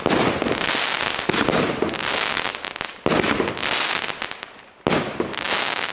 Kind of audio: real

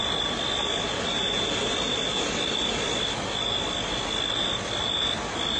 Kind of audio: real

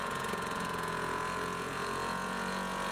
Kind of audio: fake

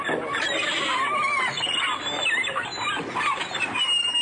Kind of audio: real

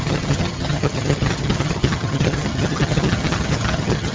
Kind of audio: fake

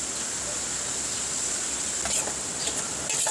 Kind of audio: real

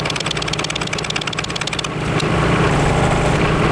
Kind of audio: real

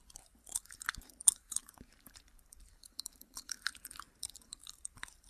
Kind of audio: fake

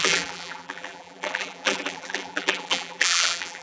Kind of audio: fake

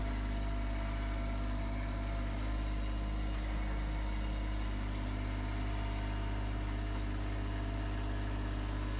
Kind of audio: real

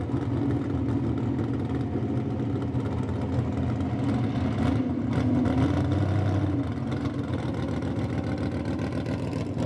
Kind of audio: real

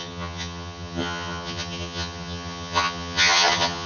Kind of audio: fake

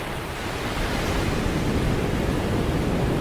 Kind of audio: real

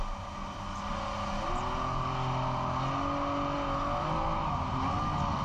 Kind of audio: real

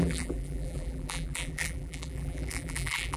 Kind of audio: fake